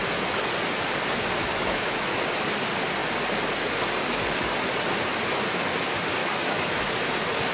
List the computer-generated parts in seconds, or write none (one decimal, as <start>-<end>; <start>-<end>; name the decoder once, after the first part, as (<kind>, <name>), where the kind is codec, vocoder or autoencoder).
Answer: 1.5-2.1 (autoencoder, DAC-VAE); 6.2-6.8